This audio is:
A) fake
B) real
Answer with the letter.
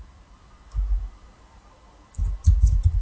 B